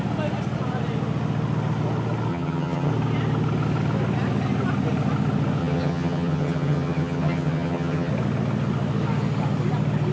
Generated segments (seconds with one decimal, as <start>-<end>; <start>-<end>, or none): 2.3-2.9; 5.6-8.1